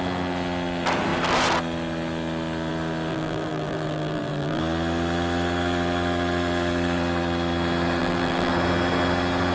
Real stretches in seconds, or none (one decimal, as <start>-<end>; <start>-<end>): 0.0-3.1; 4.6-8.0; 8.5-9.5